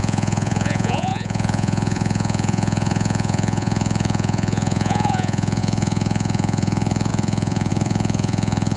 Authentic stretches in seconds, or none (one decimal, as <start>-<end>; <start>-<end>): none